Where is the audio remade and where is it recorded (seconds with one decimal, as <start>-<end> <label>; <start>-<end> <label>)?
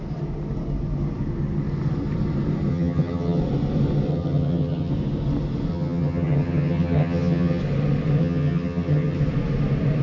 0.0-2.7 recorded; 2.7-3.4 remade; 3.4-4.1 recorded; 4.1-4.9 remade; 4.9-5.7 recorded; 5.7-7.6 remade; 7.6-8.2 recorded; 8.2-9.2 remade; 9.2-10.0 recorded